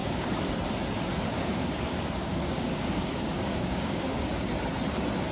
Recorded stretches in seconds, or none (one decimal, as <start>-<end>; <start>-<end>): 0.5-1.3; 4.5-5.3